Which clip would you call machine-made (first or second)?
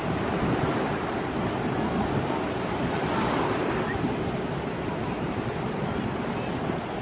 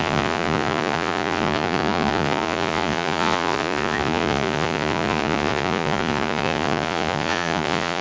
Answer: second